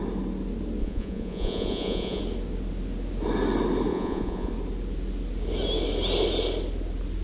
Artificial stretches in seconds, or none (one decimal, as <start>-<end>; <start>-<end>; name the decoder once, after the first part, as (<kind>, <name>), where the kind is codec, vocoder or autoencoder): 0.8-2.2 (vocoder, Vocos); 3.9-4.5